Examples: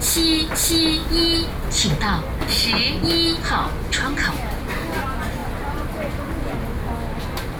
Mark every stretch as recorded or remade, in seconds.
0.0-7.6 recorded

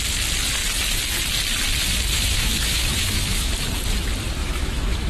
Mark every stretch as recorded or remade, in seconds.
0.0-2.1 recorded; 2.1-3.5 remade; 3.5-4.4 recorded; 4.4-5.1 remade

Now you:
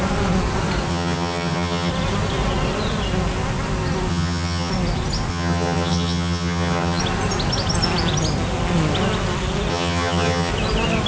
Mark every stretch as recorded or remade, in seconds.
0.0-0.9 recorded; 0.9-1.9 remade; 1.9-4.1 recorded; 4.1-4.7 remade; 4.7-5.3 recorded; 5.3-7.0 remade; 7.0-9.7 recorded; 9.7-10.5 remade; 10.5-11.1 recorded

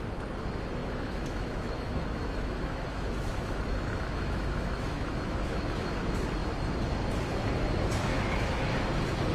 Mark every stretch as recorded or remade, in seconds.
0.0-0.8 recorded; 0.8-5.9 remade; 5.9-8.1 recorded; 8.1-8.7 remade; 8.7-9.3 recorded

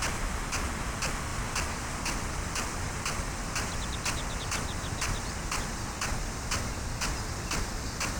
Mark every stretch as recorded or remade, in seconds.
0.0-1.3 recorded; 1.3-4.4 remade; 4.4-8.2 recorded

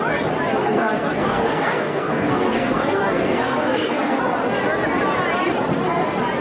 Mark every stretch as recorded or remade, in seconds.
0.0-0.6 recorded; 0.6-4.2 remade; 4.2-6.4 recorded

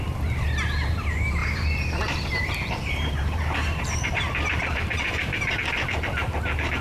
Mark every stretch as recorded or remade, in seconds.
0.0-1.4 recorded; 1.4-5.5 remade; 5.5-6.8 recorded